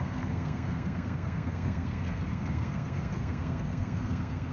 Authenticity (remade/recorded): remade